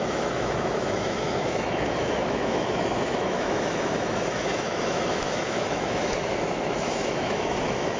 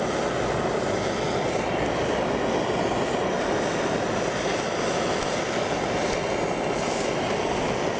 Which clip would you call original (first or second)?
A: second